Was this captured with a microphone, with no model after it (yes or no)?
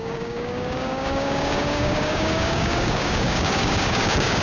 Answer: no